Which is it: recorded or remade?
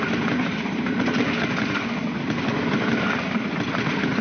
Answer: recorded